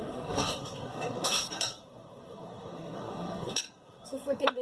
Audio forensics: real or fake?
fake